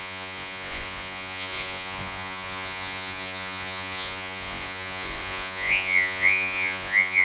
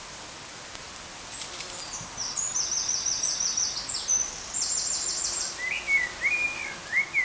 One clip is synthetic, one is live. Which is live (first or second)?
second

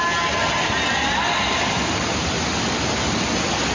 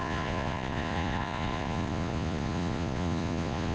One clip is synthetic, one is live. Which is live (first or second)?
first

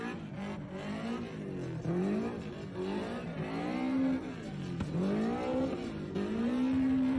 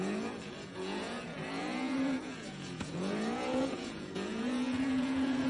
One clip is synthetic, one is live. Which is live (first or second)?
first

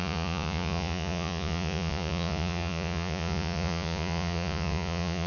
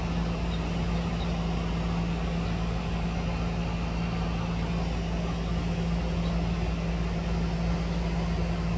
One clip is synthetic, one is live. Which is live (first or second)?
second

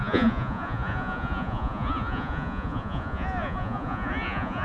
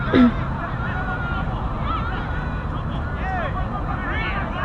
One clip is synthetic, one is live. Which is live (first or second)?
second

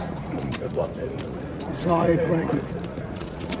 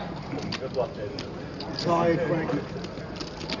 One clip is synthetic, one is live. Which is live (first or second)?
second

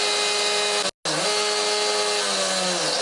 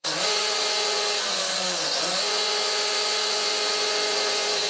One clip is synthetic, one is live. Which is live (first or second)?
first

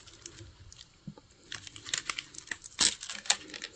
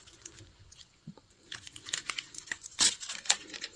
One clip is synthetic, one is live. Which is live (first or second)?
first